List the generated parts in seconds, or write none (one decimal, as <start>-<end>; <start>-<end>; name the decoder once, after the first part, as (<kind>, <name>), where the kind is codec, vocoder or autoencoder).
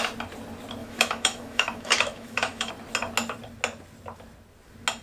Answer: 0.8-2.7 (autoencoder, DAC-VAE)